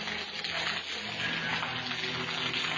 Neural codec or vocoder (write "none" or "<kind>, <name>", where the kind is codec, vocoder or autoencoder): none